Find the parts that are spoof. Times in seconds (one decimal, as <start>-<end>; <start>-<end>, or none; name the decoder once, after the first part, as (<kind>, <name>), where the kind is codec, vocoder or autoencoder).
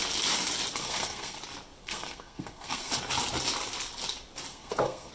0.8-1.4 (codec, SNAC); 1.8-2.9; 4.5-5.1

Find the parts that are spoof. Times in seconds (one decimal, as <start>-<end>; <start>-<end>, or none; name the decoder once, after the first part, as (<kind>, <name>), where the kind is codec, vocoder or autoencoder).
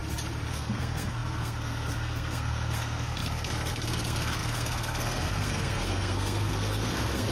0.5-7.3 (codec, SNAC)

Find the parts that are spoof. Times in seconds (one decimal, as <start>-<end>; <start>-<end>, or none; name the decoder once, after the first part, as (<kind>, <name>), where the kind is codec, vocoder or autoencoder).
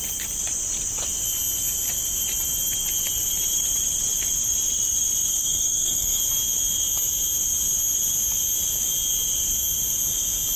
5.3-6.2 (codec, SNAC)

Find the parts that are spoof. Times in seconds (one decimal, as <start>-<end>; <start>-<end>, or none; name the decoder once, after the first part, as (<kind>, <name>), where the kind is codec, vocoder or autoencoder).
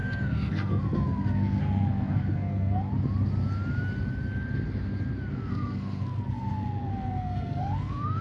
0.0-2.9 (codec, SNAC); 5.3-8.2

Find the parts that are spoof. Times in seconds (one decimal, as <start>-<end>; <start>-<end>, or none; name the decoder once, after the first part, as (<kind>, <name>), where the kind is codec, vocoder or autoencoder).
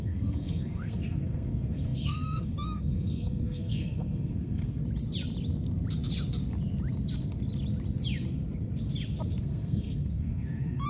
0.0-4.8 (codec, SNAC); 9.4-10.9